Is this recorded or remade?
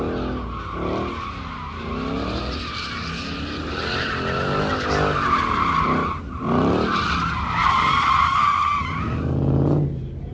recorded